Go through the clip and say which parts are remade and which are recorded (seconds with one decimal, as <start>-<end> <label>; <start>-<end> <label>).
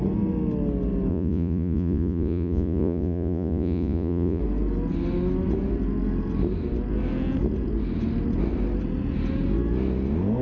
0.0-1.1 recorded; 1.1-4.4 remade; 4.4-10.4 recorded